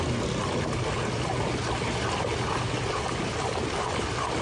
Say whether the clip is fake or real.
real